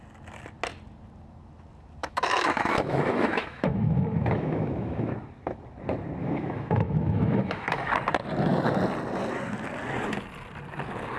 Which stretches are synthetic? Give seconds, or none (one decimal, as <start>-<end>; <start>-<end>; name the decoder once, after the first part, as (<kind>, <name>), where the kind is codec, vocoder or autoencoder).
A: 2.0-5.1 (autoencoder, DAC-VAE); 6.2-7.9